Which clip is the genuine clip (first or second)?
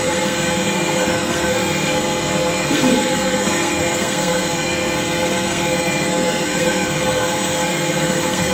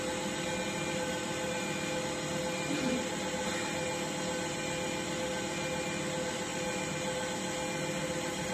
second